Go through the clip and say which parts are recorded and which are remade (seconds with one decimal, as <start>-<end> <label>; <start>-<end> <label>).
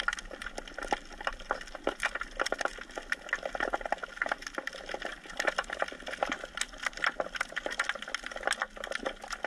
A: 0.0-5.1 recorded; 5.1-5.8 remade; 5.8-9.5 recorded